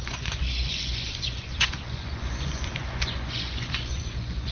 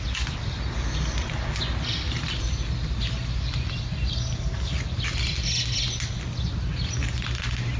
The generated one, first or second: first